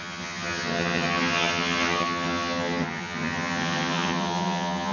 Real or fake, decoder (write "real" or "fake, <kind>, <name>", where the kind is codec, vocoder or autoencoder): fake, vocoder, HiFi-GAN